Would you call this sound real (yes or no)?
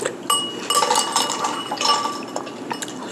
yes